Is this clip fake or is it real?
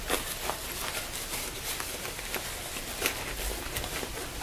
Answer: real